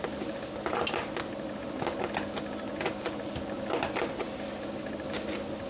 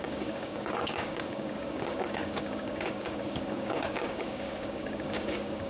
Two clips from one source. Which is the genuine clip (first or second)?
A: first